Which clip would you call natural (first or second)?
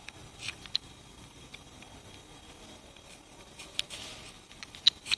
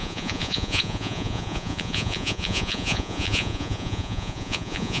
first